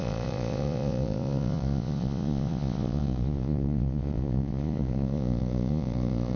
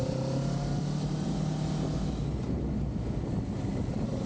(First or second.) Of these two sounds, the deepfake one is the first